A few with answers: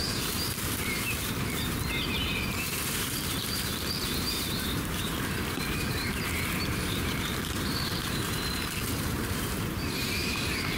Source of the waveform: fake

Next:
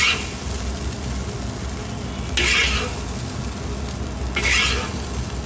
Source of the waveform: real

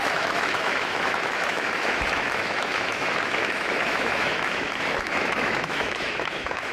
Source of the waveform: fake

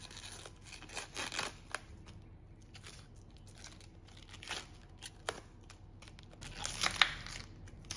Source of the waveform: real